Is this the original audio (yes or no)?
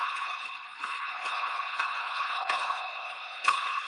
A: no